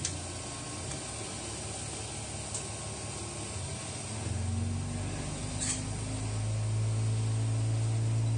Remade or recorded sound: recorded